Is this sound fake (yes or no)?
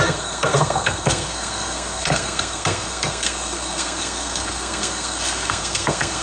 yes